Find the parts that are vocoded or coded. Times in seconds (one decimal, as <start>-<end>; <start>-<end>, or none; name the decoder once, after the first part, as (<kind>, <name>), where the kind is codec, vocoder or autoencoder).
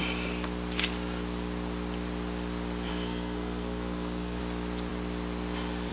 2.9-4.4 (codec, SNAC)